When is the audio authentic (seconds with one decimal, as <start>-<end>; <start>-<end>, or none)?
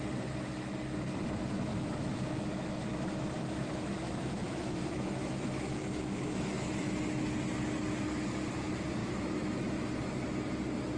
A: 0.0-1.7; 7.0-9.0; 9.9-11.0